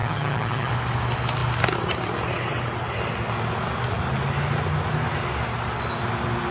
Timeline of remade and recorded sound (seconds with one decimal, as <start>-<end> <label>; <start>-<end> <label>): 0.0-0.7 remade; 0.7-6.5 recorded